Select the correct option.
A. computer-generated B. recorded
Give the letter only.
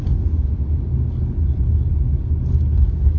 B